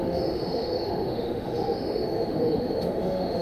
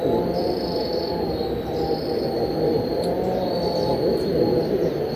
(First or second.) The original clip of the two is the second